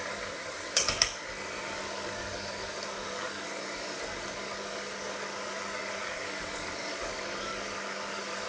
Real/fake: fake